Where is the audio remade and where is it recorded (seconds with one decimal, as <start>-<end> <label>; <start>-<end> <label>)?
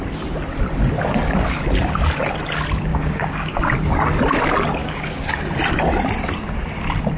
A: 0.0-2.9 recorded; 2.9-3.6 remade; 3.6-4.8 recorded; 4.8-5.3 remade; 5.3-7.2 recorded